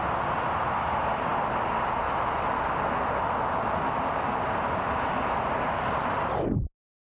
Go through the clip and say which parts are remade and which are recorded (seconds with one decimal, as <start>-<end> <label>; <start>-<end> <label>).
0.0-7.0 recorded